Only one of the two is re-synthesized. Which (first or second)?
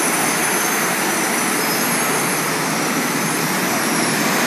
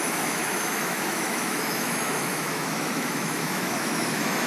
second